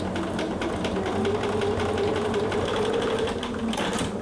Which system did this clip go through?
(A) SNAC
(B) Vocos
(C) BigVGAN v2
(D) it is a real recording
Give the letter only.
D